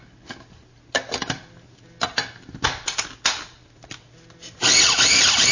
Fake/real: real